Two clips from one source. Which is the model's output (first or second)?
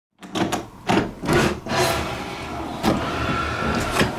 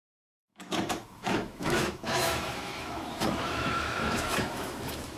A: second